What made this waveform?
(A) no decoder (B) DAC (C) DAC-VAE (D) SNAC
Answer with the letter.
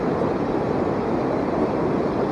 A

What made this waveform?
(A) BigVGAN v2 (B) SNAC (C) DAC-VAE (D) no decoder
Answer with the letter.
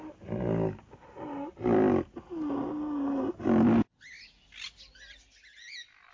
D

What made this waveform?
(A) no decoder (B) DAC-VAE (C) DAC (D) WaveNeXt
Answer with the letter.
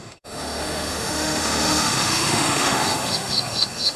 B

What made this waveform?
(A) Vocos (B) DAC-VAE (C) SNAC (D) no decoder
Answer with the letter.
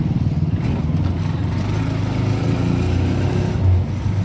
D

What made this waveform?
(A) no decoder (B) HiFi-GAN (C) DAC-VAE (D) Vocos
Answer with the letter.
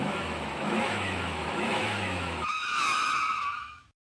C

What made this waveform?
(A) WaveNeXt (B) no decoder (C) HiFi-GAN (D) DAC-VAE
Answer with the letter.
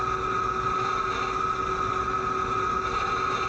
B